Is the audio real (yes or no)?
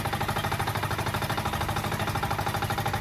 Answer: yes